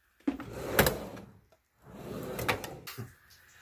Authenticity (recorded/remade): recorded